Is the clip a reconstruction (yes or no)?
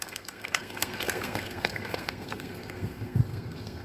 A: yes